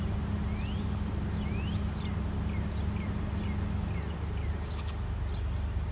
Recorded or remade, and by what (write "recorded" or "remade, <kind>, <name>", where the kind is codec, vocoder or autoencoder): recorded